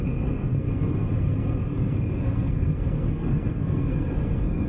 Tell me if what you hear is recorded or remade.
remade